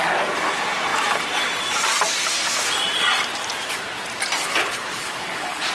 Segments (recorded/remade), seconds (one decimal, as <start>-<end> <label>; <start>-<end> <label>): 0.0-4.4 recorded; 4.4-5.7 remade